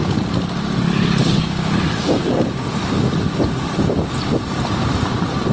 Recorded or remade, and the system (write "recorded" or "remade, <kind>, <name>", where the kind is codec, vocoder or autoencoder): recorded